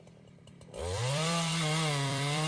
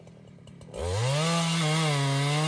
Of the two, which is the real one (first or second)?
second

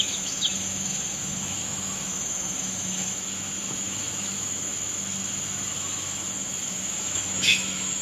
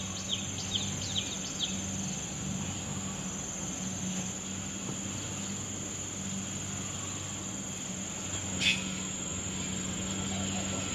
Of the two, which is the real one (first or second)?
second